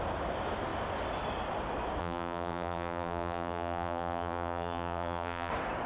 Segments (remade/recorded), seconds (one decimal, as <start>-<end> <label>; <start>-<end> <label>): 0.0-2.0 recorded; 2.0-5.5 remade; 5.5-5.9 recorded